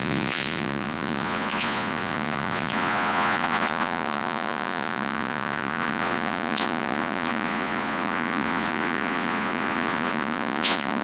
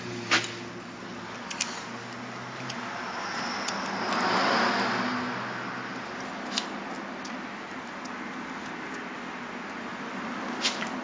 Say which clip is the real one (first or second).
second